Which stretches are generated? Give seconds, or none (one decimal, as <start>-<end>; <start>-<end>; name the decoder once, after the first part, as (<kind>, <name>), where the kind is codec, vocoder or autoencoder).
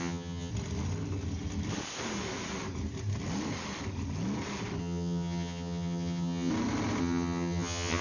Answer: 0.0-0.5 (vocoder, HiFi-GAN); 4.8-6.5; 7.0-8.0